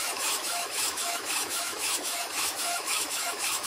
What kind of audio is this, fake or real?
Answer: fake